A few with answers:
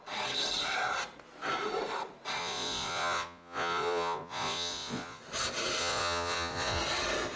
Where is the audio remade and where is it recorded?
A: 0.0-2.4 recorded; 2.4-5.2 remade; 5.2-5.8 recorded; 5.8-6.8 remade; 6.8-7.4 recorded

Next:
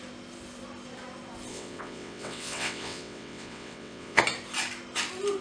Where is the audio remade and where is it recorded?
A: 0.0-1.5 recorded; 1.5-4.2 remade; 4.2-5.4 recorded

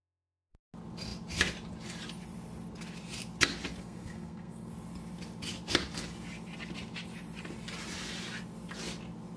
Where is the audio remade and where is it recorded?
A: 0.0-3.8 recorded; 3.8-4.7 remade; 4.7-9.4 recorded

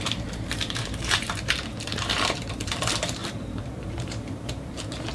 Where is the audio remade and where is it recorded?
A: 0.0-5.1 remade

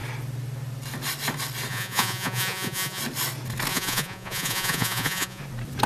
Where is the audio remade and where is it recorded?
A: 0.0-1.7 recorded; 1.7-3.0 remade; 3.0-3.7 recorded; 3.7-5.4 remade; 5.4-5.9 recorded

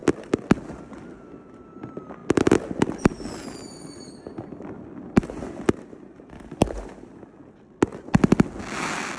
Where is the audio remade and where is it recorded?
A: 0.0-0.6 remade; 0.6-2.2 recorded; 2.2-7.4 remade; 7.4-9.2 recorded

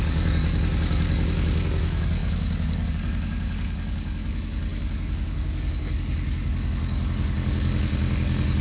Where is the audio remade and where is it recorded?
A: 0.0-8.6 remade

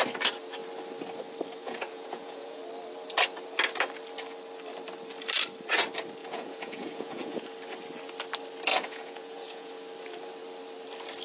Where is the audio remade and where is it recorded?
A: 0.0-1.6 recorded; 1.6-2.6 remade; 2.6-6.2 recorded; 6.2-7.4 remade; 7.4-8.7 recorded; 8.7-9.7 remade; 9.7-11.2 recorded